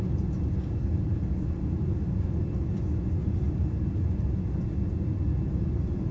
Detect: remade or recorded recorded